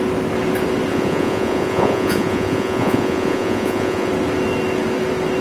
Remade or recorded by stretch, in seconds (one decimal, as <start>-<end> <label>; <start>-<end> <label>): 0.0-0.9 recorded; 0.9-4.1 remade; 4.1-5.4 recorded